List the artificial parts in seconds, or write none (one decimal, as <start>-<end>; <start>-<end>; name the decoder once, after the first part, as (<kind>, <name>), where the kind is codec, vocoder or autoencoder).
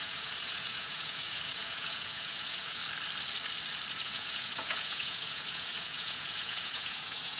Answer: 0.0-2.8 (vocoder, Vocos); 3.9-7.4